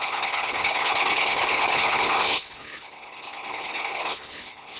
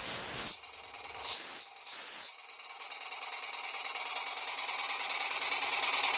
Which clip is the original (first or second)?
second